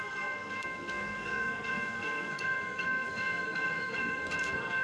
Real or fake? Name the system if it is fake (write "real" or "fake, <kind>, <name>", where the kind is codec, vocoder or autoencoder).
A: fake, codec, SNAC